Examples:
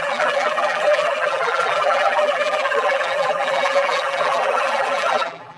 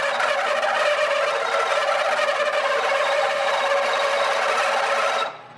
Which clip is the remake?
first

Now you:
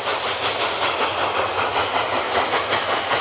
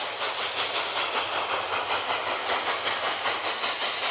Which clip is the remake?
first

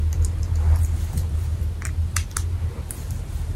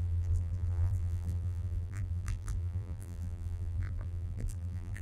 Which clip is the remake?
second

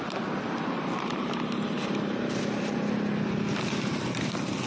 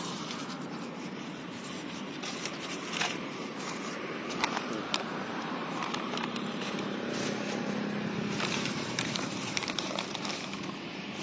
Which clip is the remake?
second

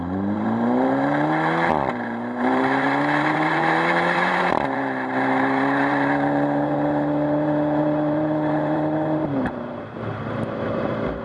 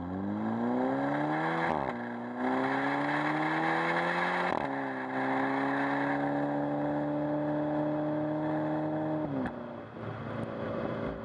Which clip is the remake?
first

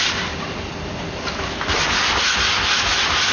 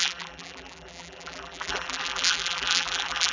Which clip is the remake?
second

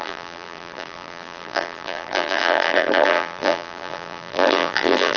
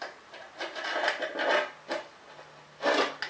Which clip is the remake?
first